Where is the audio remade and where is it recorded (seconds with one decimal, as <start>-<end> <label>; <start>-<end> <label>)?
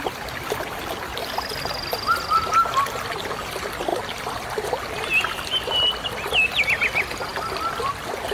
0.0-8.3 recorded